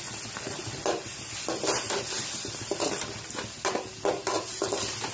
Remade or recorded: recorded